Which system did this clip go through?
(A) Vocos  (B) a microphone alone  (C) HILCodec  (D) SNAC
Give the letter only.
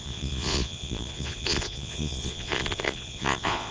A